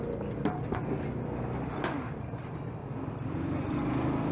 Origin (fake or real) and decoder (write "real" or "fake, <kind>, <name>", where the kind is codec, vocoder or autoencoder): real